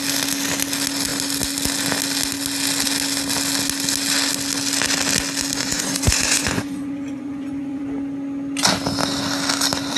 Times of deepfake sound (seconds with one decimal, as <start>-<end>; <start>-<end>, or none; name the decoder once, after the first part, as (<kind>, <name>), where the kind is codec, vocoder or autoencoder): 5.6-7.8 (vocoder, Vocos)